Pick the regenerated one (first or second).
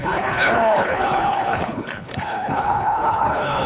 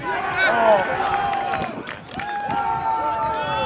first